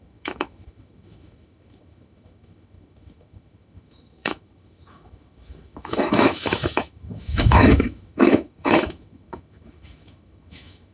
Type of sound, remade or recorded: remade